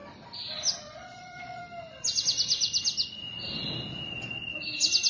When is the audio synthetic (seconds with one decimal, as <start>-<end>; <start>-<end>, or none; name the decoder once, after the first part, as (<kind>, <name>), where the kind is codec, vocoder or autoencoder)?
0.8-1.6 (vocoder, Vocos)